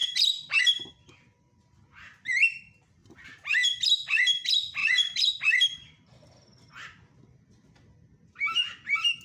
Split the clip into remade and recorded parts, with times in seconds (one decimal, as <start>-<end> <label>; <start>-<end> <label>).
0.0-0.6 remade; 0.6-3.0 recorded; 3.0-3.8 remade; 3.8-4.8 recorded; 4.8-5.3 remade; 5.3-9.2 recorded

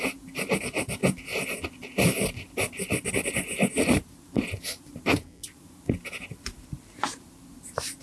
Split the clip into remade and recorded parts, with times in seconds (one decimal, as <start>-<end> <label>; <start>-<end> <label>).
0.0-1.0 remade; 1.0-3.7 recorded; 3.7-8.0 remade

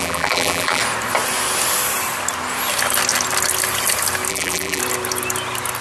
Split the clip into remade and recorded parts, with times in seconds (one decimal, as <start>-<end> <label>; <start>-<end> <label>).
0.0-0.8 remade; 0.8-4.3 recorded; 4.3-4.8 remade; 4.8-5.8 recorded

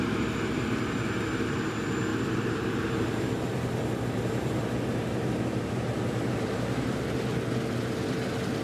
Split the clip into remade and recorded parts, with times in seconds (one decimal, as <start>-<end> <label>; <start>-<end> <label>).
0.0-2.1 recorded; 2.1-7.0 remade; 7.0-8.6 recorded

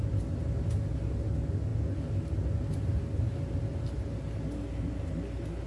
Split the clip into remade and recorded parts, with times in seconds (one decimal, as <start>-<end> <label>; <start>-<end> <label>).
0.0-5.7 recorded

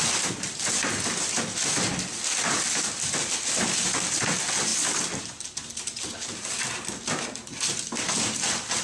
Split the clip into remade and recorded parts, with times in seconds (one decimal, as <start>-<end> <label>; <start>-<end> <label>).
0.0-8.8 recorded

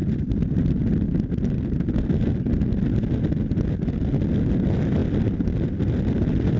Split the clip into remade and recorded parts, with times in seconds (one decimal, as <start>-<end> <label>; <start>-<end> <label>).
0.0-0.9 remade; 0.9-6.6 recorded

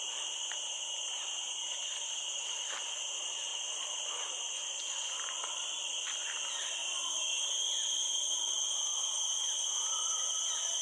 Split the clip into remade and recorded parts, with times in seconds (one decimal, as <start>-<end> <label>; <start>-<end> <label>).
0.0-0.4 recorded; 0.4-2.7 remade; 2.7-10.8 recorded